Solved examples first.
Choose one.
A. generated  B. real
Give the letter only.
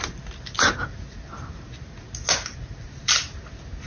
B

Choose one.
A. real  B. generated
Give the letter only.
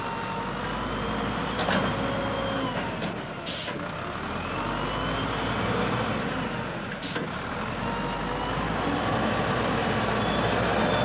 A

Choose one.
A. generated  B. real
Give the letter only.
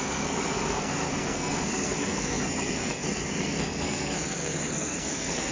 A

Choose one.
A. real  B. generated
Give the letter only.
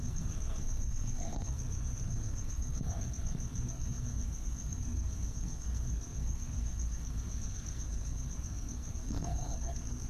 B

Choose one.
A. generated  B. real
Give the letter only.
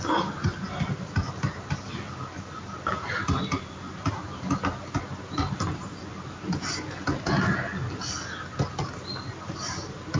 B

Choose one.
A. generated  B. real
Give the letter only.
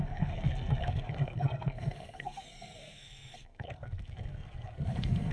A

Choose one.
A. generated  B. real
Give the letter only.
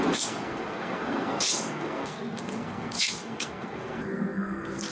A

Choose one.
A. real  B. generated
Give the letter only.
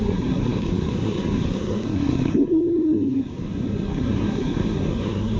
B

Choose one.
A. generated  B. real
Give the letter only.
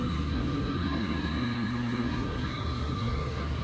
A